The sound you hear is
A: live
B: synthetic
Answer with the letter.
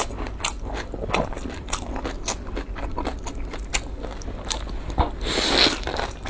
A